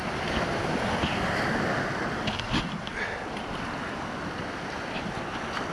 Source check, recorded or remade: recorded